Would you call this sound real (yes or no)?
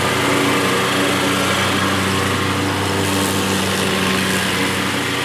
yes